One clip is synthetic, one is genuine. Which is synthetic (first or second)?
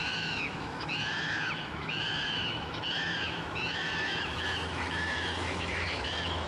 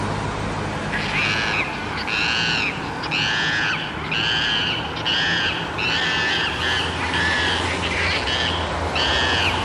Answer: first